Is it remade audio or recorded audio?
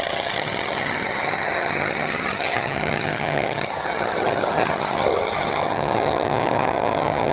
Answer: remade